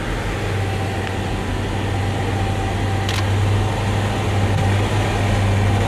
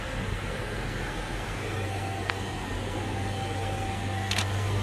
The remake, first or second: second